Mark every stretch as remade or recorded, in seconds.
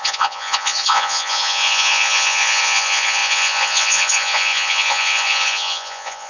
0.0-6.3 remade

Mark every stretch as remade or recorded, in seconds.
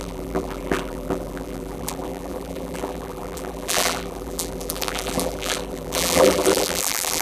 0.0-7.2 remade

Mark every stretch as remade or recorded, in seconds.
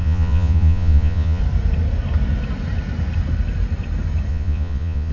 0.0-1.4 remade; 1.4-4.3 recorded; 4.3-5.1 remade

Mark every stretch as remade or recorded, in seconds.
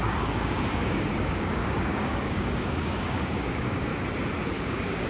0.0-3.9 remade; 3.9-4.6 recorded; 4.6-5.1 remade